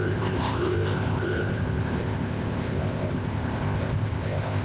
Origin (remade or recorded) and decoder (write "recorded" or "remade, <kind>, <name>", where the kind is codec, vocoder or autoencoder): remade, codec, ZipCodec